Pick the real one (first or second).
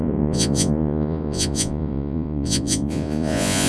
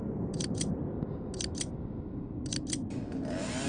second